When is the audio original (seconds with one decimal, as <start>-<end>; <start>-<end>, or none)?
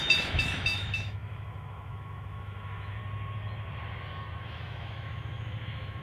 3.0-4.4